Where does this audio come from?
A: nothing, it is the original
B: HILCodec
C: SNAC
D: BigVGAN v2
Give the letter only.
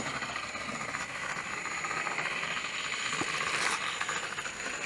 A